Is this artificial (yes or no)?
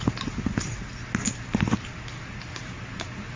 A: no